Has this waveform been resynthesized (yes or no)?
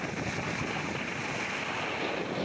no